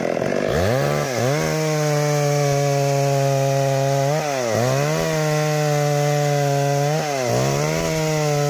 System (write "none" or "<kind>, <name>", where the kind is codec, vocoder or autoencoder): none